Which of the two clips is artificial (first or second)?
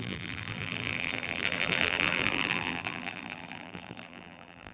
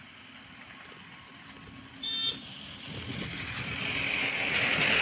first